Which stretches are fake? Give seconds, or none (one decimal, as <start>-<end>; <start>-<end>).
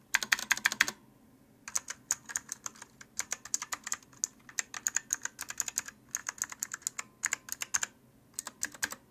none